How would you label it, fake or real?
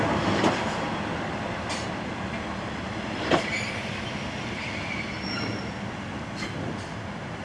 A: real